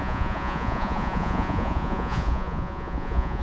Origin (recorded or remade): remade